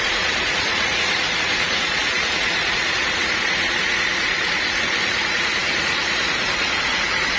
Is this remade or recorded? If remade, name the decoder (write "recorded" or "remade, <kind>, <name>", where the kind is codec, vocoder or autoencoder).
remade, vocoder, Vocos